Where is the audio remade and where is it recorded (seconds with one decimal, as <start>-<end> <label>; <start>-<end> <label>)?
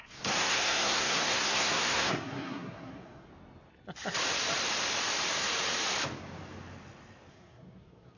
0.0-3.3 remade; 3.3-7.3 recorded; 7.3-8.2 remade